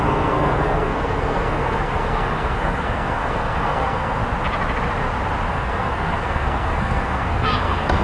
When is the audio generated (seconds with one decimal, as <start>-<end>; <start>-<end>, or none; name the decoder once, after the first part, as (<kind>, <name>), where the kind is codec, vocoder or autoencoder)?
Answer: 0.0-4.2 (codec, SNAC); 5.5-8.0